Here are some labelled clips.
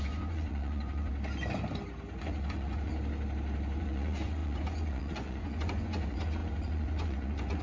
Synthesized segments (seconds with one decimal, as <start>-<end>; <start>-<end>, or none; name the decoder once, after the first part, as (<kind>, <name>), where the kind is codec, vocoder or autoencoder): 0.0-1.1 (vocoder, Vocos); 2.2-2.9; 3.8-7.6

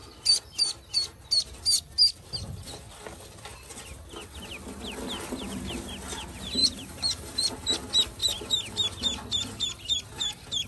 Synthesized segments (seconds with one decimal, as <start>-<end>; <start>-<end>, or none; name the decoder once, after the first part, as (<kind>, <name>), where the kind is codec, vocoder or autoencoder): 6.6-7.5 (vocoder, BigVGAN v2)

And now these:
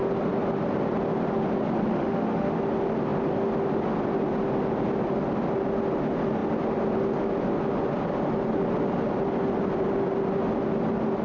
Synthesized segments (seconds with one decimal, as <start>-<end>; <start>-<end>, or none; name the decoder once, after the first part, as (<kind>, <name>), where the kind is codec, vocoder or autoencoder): 1.9-2.6 (autoencoder, DAC-VAE)